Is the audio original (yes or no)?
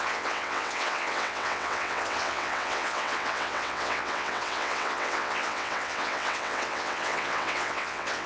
no